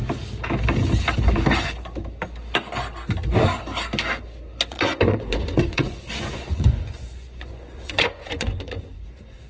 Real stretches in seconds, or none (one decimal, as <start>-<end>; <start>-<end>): 0.0-4.7